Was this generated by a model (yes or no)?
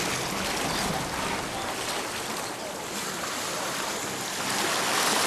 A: no